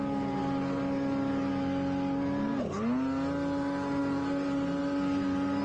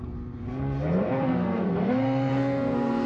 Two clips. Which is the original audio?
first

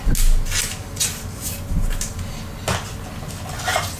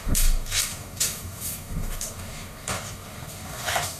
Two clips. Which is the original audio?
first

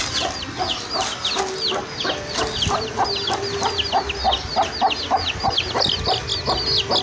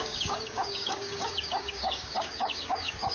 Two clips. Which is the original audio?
first